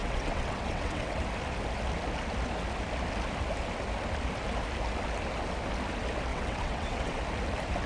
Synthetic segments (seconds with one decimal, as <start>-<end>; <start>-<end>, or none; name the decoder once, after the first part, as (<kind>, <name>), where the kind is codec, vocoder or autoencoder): 0.0-1.2 (vocoder, WaveNeXt); 6.3-7.2